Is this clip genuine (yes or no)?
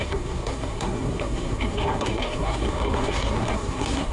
no